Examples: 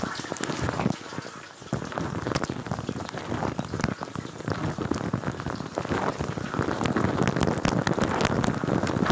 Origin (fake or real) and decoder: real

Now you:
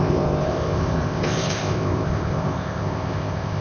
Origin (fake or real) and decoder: fake, codec, ZipCodec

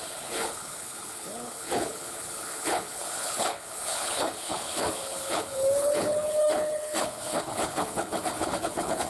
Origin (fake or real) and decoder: fake, codec, HILCodec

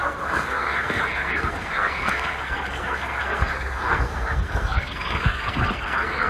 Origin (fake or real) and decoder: fake, codec, SNAC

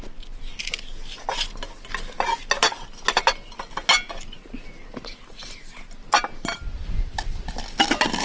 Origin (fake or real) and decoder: real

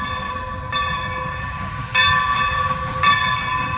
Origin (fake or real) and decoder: real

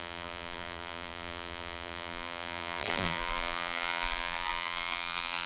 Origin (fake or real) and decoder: fake, vocoder, BigVGAN v2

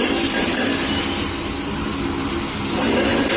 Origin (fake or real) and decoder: real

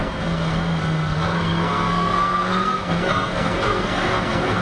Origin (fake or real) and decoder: fake, codec, SNAC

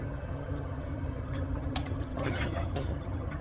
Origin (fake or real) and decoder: fake, vocoder, HiFi-GAN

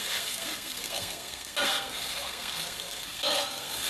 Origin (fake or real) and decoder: fake, codec, SNAC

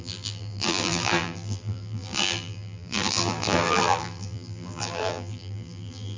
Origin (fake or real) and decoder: fake, vocoder, BigVGAN v2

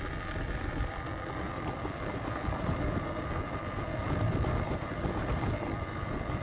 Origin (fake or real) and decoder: fake, vocoder, BigVGAN v2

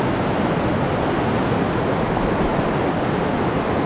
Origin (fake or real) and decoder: real